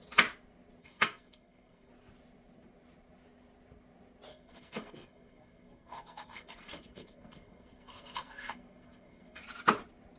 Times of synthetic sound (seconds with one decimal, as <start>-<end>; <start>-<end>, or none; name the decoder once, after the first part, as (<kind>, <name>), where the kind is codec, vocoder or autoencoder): 0.8-1.9 (codec, SNAC); 4.3-9.4